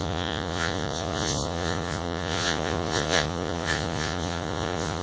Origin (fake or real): fake